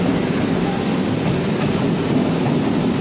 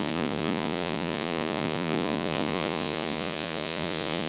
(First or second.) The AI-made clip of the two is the second